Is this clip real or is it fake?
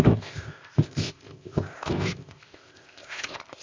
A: fake